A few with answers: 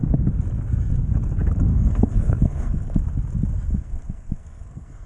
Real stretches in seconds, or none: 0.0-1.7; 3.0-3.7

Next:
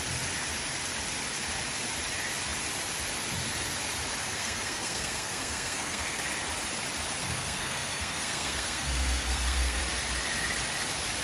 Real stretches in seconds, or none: 0.0-4.2; 6.2-7.2; 9.8-11.2

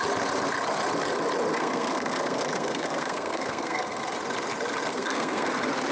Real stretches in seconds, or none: 0.0-1.5; 4.0-4.9; 5.5-5.9

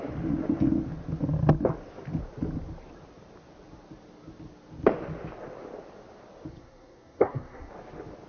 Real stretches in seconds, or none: 0.0-6.5; 7.7-8.3

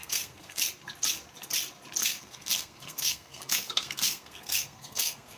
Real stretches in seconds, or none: 0.6-2.0

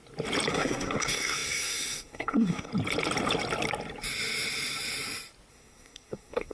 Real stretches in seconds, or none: 0.0-0.5; 2.7-5.5

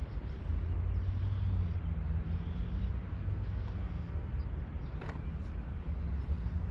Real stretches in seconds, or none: 0.0-3.1; 4.4-6.7

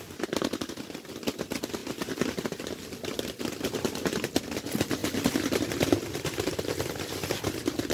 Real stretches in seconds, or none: 0.0-7.9